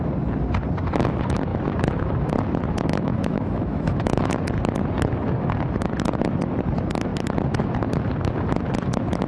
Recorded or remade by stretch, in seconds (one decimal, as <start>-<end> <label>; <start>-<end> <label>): 0.0-2.9 recorded; 2.9-4.2 remade; 4.2-9.3 recorded